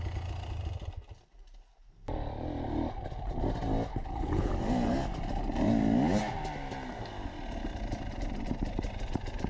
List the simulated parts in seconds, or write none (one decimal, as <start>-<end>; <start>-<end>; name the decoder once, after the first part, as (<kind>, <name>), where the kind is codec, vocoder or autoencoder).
3.9-4.5 (codec, HILCodec)